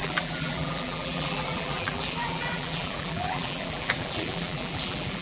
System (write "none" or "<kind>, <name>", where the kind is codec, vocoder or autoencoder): vocoder, BigVGAN v2